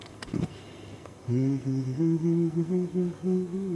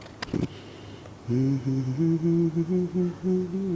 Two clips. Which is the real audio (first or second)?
second